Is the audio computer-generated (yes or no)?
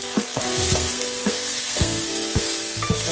yes